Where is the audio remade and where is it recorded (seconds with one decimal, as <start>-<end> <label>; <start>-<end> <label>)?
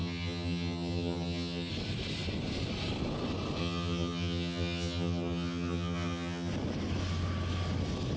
0.0-1.7 remade; 1.7-3.6 recorded; 3.6-6.5 remade; 6.5-8.2 recorded